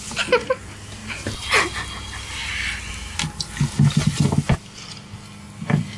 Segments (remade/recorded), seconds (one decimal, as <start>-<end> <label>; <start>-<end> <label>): 0.0-6.0 recorded